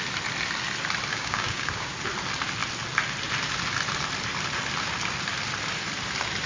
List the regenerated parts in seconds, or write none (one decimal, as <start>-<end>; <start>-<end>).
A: 1.1-1.9